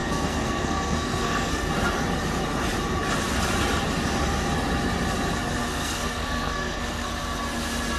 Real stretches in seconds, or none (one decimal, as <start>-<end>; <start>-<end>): 1.7-5.6; 7.1-8.0